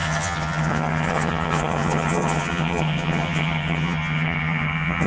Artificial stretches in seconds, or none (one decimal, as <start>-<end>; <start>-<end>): 0.0-5.1